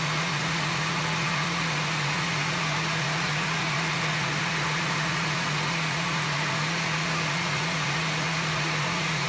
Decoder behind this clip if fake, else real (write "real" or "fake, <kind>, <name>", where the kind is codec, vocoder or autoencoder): fake, vocoder, Vocos